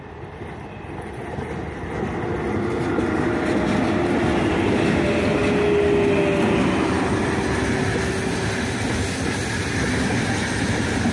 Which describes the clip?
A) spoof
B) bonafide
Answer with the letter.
B